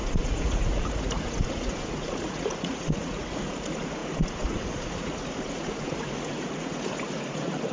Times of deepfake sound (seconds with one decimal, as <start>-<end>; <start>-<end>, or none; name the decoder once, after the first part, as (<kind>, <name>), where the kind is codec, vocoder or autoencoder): 0.0-7.7 (vocoder, Vocos)